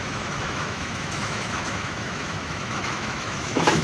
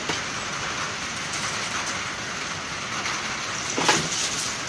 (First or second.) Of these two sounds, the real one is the second